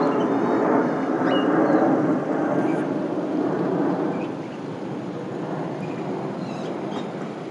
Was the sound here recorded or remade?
recorded